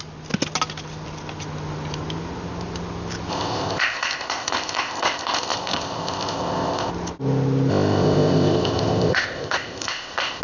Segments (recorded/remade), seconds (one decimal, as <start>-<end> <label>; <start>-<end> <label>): 0.0-3.3 recorded; 3.3-6.9 remade; 6.9-7.7 recorded; 7.7-10.4 remade